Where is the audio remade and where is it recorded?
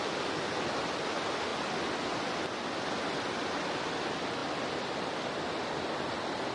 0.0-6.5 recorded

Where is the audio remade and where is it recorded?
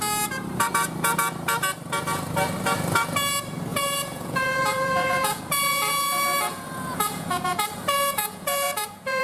0.0-3.7 recorded; 3.7-5.4 remade; 5.4-6.5 recorded; 6.5-9.2 remade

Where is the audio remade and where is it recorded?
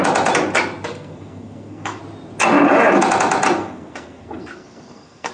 0.0-0.9 recorded; 0.9-2.0 remade; 2.0-3.6 recorded; 3.6-5.3 remade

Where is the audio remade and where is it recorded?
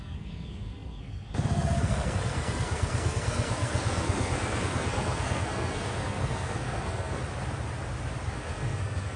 0.0-7.2 remade; 7.2-8.3 recorded; 8.3-9.2 remade